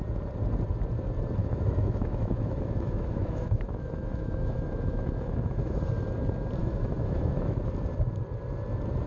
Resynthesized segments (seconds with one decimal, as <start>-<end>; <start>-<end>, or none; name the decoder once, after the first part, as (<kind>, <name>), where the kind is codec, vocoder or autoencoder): 1.4-5.8 (autoencoder, DAC-VAE); 6.6-7.6